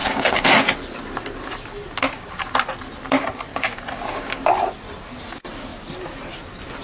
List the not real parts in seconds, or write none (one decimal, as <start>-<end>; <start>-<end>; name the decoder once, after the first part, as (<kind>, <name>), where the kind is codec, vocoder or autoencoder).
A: 0.0-0.5 (codec, DAC); 3.5-4.4